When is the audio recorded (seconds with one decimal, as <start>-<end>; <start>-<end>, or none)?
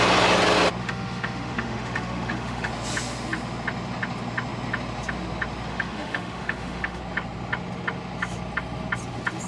0.0-0.8; 2.7-5.7; 7.0-9.5